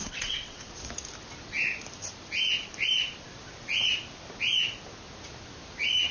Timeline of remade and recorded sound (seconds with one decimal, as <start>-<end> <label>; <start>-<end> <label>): 0.0-0.7 remade; 0.7-6.1 recorded